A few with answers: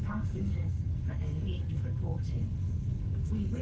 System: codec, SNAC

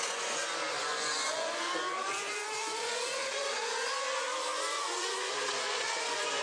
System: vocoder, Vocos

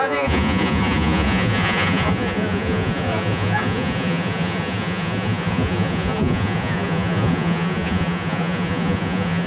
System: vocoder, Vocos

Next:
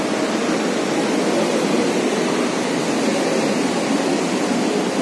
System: none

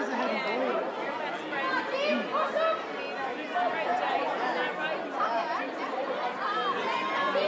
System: none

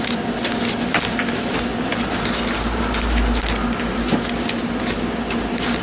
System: none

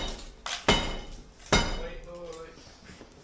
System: none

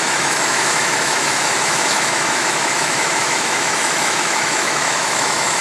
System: autoencoder, DAC-VAE